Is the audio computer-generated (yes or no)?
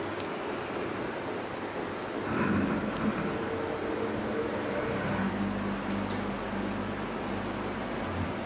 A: no